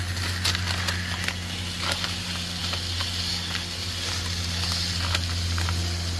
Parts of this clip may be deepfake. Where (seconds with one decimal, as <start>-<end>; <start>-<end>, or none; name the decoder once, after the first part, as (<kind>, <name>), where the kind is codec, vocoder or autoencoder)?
none